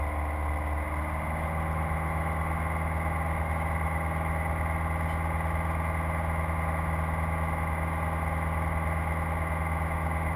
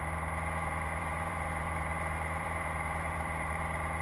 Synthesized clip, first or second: second